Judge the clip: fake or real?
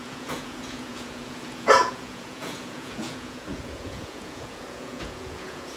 fake